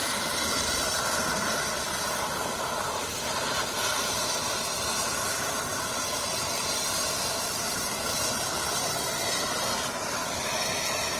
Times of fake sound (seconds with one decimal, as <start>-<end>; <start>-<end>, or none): 0.0-5.7; 7.3-11.2